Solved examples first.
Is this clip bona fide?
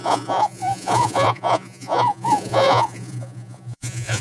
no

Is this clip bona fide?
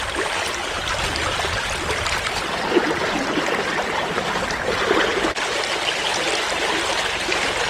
yes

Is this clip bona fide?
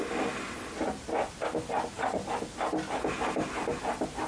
yes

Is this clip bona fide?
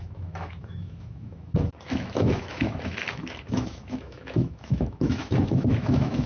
no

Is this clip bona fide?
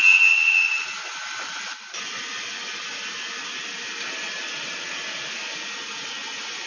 yes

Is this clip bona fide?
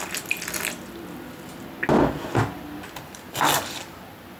yes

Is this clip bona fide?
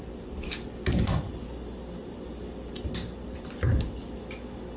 yes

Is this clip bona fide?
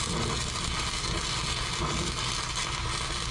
yes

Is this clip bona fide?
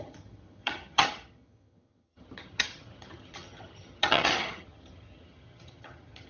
no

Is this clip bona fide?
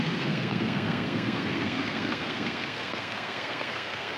no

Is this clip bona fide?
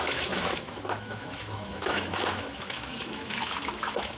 no